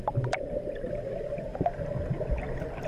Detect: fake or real real